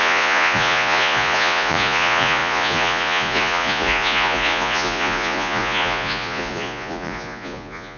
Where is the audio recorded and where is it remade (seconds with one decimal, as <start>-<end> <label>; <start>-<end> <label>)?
0.0-8.0 remade